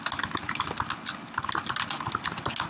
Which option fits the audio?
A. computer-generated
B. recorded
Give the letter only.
B